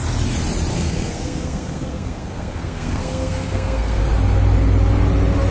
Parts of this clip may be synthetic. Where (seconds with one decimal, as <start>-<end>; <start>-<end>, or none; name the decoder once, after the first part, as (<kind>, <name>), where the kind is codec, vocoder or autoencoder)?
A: 0.7-4.0 (codec, SNAC)